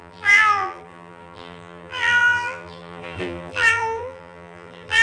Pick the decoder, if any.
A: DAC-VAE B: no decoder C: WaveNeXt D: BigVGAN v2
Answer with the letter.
D